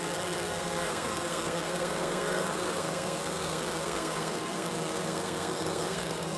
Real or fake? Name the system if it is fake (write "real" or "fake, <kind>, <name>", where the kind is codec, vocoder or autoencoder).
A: fake, codec, SNAC